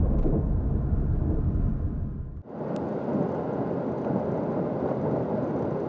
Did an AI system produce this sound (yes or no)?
no